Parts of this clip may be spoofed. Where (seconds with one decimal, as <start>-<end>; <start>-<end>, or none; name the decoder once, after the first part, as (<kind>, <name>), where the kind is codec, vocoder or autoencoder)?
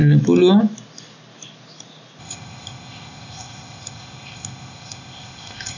2.2-5.8 (codec, ZipCodec)